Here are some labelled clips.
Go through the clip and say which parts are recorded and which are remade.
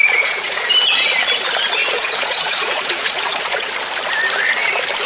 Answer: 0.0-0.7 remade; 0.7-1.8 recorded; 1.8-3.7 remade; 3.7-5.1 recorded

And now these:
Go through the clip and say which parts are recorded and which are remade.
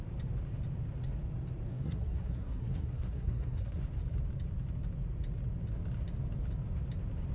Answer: 0.0-1.7 recorded; 1.7-3.8 remade; 3.8-7.3 recorded